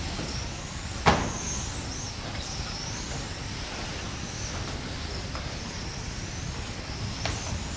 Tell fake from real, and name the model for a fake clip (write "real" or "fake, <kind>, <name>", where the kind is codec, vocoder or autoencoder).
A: real